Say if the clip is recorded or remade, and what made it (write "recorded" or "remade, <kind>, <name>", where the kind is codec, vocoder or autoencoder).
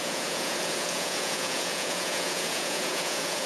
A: remade, vocoder, Vocos